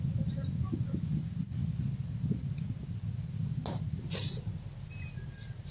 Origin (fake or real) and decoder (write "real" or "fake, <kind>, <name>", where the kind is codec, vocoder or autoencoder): real